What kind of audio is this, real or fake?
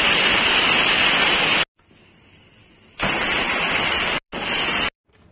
real